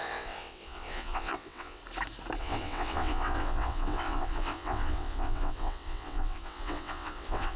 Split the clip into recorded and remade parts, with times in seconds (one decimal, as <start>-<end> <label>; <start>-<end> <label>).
0.0-1.8 remade; 1.8-2.4 recorded; 2.4-7.6 remade